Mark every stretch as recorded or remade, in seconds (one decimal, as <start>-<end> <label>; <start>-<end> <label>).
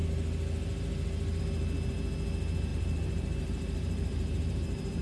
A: 0.0-2.7 recorded; 2.7-5.0 remade